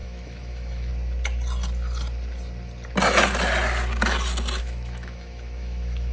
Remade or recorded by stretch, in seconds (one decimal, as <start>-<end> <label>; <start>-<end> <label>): 0.0-0.9 remade; 0.9-4.6 recorded; 4.6-6.1 remade